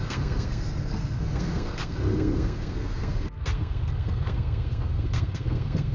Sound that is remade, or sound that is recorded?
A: remade